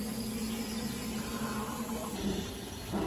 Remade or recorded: recorded